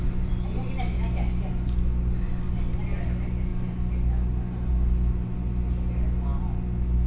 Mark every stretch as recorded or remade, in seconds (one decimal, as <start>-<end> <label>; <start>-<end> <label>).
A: 0.0-7.1 recorded